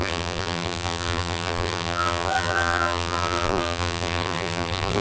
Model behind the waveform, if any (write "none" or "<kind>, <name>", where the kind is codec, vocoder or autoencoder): vocoder, BigVGAN v2